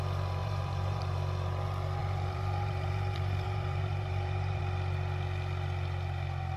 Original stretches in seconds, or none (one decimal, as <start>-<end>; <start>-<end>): 0.0-0.4; 1.0-2.0; 4.6-6.6